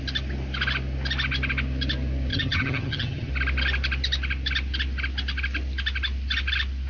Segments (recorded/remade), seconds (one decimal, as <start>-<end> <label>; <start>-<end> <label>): 0.0-2.3 recorded; 2.3-3.3 remade; 3.3-6.9 recorded